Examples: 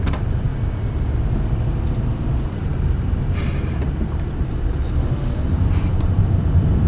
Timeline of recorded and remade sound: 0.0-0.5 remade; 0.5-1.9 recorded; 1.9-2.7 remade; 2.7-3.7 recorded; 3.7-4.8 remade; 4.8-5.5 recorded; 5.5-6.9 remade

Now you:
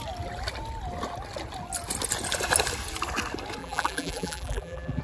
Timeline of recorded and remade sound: 0.0-3.6 recorded; 3.6-5.0 remade

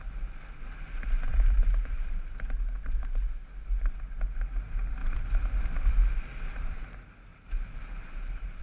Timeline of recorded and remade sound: 0.0-1.3 recorded; 1.3-2.2 remade; 2.2-5.0 recorded; 5.0-5.9 remade; 5.9-7.3 recorded; 7.3-8.6 remade

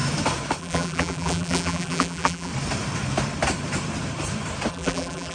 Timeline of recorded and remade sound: 0.0-0.6 recorded; 0.6-2.5 remade; 2.5-4.7 recorded; 4.7-5.3 remade

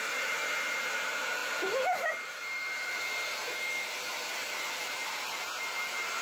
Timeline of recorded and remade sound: 0.0-4.4 recorded; 4.4-5.2 remade; 5.2-6.2 recorded

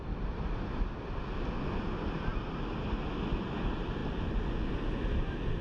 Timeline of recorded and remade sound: 0.0-5.6 recorded